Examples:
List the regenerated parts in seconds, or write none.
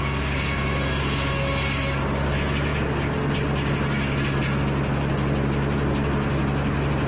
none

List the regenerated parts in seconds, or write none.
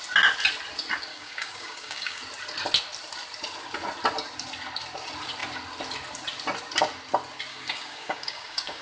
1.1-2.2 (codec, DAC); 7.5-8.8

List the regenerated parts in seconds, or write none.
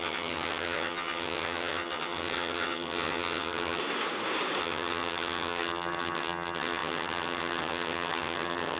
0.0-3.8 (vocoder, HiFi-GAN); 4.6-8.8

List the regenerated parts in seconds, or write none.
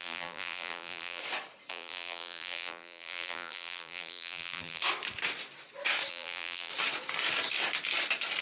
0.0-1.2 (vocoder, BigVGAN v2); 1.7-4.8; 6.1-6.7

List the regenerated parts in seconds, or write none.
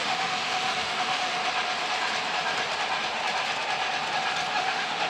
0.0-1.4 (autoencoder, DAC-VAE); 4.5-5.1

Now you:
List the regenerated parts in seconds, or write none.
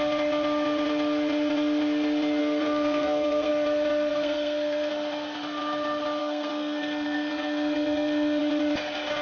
2.4-3.5 (codec, SNAC); 4.1-4.9; 6.2-8.4